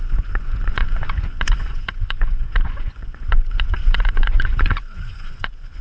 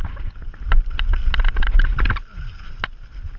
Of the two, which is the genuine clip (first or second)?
second